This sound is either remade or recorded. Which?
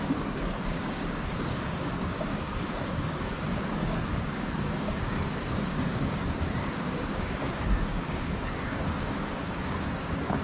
remade